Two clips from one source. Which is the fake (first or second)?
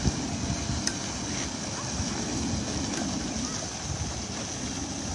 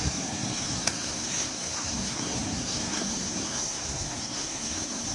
second